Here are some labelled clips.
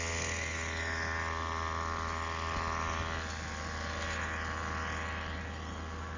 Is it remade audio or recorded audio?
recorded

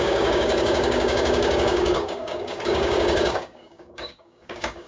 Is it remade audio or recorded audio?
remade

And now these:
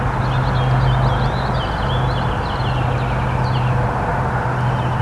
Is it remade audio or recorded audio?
recorded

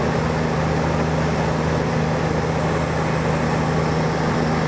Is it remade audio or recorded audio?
recorded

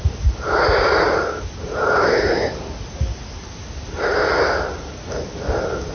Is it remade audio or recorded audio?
recorded